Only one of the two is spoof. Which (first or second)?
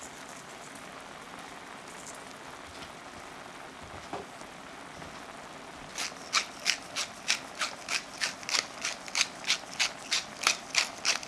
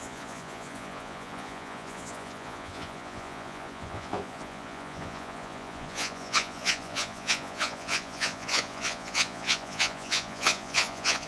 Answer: second